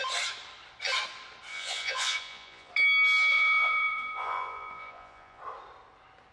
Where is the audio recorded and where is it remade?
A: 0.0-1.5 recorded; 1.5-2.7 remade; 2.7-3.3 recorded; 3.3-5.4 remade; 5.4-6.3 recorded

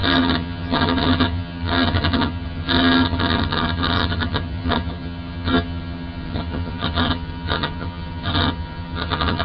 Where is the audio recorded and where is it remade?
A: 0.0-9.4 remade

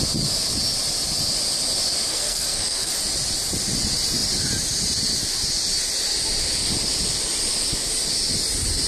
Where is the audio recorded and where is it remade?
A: 0.0-2.1 recorded; 2.1-2.9 remade; 2.9-8.9 recorded

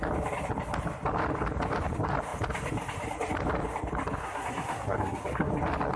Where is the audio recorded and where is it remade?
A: 0.0-4.2 recorded; 4.2-5.5 remade; 5.5-6.0 recorded

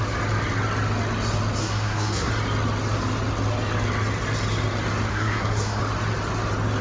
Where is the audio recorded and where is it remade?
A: 0.0-1.6 recorded; 1.6-2.3 remade; 2.3-5.1 recorded; 5.1-5.8 remade; 5.8-6.8 recorded

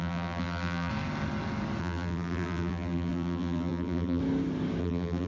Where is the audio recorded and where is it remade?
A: 0.0-0.9 remade; 0.9-1.8 recorded; 1.8-4.2 remade; 4.2-4.8 recorded; 4.8-5.3 remade

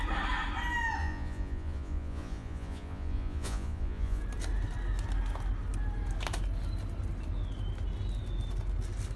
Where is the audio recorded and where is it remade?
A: 0.0-1.0 recorded; 1.0-4.2 remade; 4.2-9.2 recorded

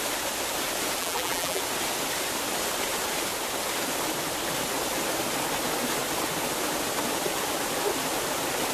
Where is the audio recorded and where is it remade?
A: 0.0-1.0 recorded; 1.0-1.6 remade; 1.6-8.7 recorded